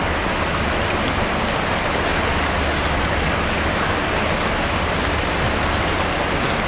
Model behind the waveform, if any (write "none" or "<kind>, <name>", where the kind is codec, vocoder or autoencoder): none